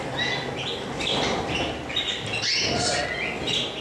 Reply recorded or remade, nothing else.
recorded